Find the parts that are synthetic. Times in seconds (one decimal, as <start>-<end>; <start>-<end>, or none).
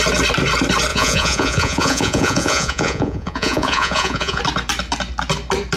0.9-4.4